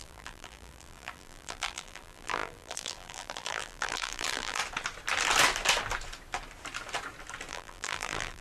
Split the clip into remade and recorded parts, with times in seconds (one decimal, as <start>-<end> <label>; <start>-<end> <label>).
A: 0.0-4.6 remade; 4.6-7.5 recorded; 7.5-8.4 remade